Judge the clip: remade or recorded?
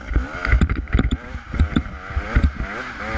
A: recorded